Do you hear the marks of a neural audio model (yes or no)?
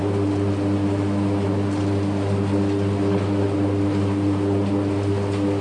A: no